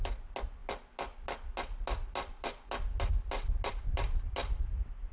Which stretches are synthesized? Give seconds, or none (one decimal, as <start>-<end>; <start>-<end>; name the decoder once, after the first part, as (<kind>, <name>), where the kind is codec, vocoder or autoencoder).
none

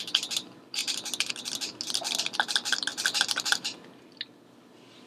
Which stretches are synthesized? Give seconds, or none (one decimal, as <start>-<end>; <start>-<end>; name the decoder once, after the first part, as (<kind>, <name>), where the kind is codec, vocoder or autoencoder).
0.8-1.3 (vocoder, BigVGAN v2)

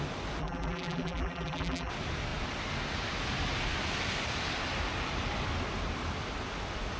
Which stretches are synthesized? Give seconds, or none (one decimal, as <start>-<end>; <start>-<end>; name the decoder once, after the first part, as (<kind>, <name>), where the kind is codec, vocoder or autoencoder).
0.4-1.9 (vocoder, BigVGAN v2)

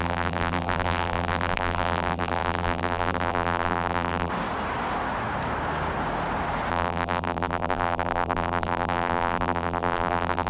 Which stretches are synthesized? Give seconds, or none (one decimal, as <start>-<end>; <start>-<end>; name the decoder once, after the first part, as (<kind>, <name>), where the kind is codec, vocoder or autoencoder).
0.0-4.3 (vocoder, BigVGAN v2); 6.7-10.5

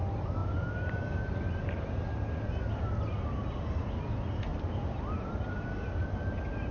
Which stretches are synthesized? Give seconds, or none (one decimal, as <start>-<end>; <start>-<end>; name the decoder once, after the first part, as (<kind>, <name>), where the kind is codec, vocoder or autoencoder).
4.5-5.4 (vocoder, BigVGAN v2)

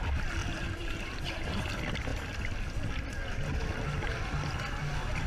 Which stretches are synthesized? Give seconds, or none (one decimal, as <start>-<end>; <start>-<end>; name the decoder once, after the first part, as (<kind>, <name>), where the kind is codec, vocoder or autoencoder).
0.4-1.2 (vocoder, BigVGAN v2)

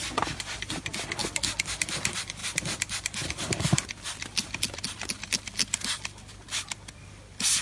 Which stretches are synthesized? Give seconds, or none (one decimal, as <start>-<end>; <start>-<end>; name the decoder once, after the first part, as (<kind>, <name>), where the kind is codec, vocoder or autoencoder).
2.4-5.1 (vocoder, BigVGAN v2)